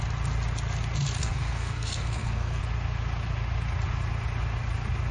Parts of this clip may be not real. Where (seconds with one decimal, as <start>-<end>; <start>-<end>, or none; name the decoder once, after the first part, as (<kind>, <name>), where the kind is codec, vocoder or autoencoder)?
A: 1.2-2.6 (codec, SNAC)